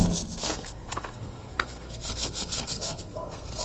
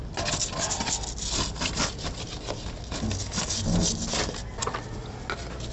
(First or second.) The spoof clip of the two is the first